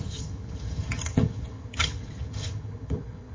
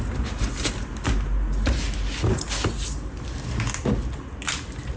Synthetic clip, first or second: first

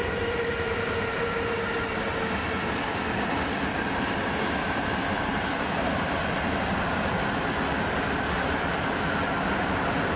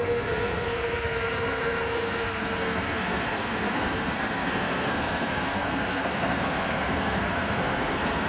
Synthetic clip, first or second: second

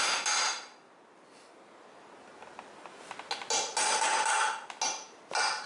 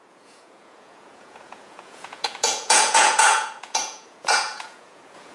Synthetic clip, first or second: second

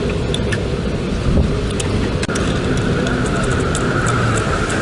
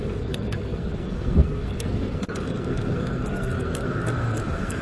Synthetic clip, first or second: second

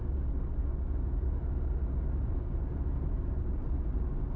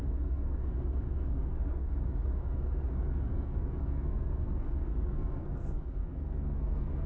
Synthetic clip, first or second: second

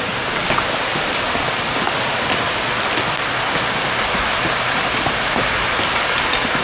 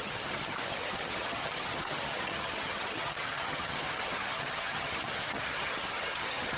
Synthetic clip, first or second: second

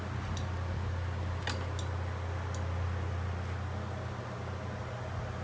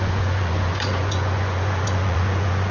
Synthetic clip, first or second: second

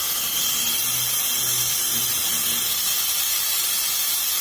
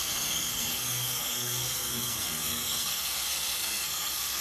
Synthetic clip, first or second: second